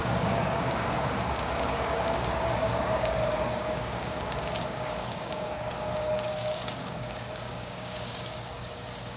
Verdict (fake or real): fake